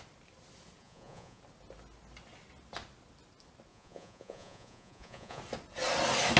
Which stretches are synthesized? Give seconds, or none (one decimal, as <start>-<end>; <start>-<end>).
0.8-1.4; 3.7-5.4